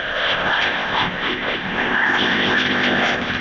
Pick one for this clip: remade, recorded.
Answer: remade